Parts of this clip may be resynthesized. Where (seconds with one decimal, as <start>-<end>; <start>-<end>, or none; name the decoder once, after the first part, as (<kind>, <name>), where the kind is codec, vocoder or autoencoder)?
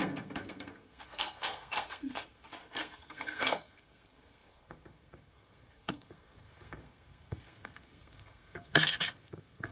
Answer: 0.0-9.7 (codec, SNAC)